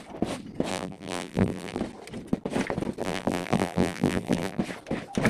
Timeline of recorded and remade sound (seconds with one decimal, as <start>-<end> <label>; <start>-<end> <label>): 0.0-0.7 recorded; 0.7-1.8 remade; 1.8-3.0 recorded; 3.0-4.6 remade; 4.6-5.3 recorded